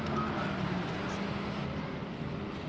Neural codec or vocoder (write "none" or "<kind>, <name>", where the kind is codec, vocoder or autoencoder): none